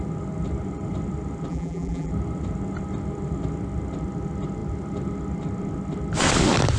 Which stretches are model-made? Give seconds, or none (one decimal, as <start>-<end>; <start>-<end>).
1.5-2.1